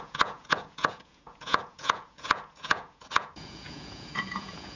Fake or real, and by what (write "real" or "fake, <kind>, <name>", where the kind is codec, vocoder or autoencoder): fake, vocoder, Vocos